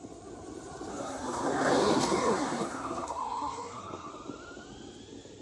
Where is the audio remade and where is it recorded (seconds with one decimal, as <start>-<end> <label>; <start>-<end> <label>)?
0.0-0.9 recorded; 0.9-4.1 remade; 4.1-5.4 recorded